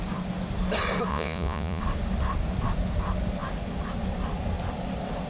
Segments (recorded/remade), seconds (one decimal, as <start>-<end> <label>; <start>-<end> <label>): 0.0-1.1 recorded; 1.1-1.8 remade; 1.8-5.3 recorded